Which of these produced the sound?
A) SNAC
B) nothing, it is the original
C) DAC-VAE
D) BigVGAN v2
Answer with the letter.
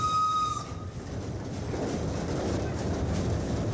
B